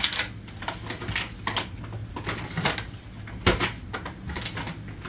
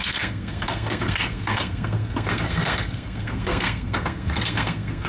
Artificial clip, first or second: second